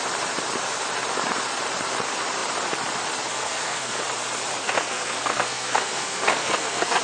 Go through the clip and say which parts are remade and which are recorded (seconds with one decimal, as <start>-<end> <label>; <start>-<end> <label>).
0.0-3.3 recorded; 3.3-4.0 remade; 4.0-4.6 recorded; 4.6-7.0 remade